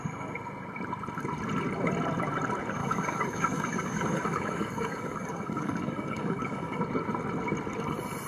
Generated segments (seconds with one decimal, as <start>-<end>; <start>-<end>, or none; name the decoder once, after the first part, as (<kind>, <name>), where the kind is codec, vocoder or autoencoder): 2.8-6.8 (codec, DAC)